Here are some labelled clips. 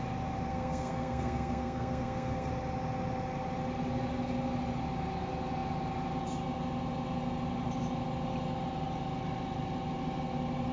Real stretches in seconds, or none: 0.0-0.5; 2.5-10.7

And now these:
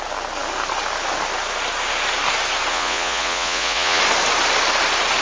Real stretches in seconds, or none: 0.0-2.7; 4.0-5.2